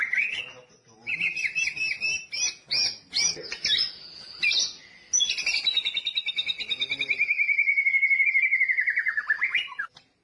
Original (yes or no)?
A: yes